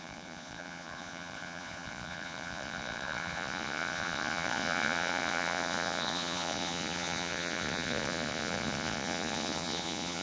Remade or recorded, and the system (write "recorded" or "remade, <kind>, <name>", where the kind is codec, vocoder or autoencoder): remade, vocoder, Vocos